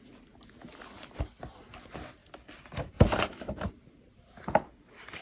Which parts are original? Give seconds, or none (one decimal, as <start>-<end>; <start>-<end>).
0.0-5.2